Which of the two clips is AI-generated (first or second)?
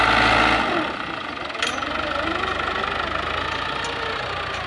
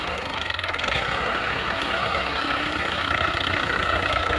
second